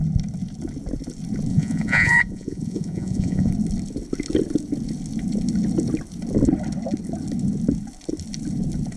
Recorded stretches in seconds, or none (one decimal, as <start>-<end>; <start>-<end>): 0.0-1.5; 3.5-9.0